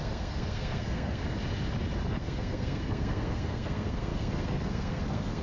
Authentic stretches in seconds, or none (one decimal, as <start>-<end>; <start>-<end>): 1.2-2.1